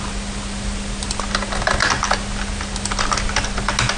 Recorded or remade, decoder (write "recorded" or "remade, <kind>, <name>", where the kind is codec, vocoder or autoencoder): recorded